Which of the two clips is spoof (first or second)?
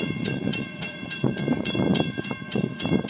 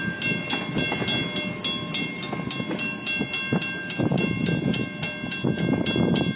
first